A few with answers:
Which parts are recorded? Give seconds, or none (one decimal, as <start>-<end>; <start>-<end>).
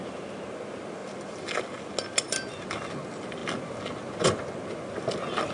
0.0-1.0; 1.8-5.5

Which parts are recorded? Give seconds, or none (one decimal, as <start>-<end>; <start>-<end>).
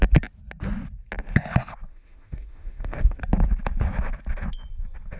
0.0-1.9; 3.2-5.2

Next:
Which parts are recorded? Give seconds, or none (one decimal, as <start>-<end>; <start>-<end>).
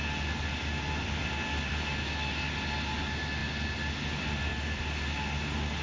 0.0-5.8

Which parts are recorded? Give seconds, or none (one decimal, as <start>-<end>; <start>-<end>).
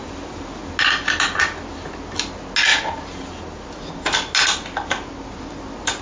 0.0-6.0